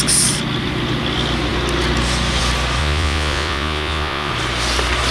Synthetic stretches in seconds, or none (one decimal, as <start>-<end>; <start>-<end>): 2.8-4.3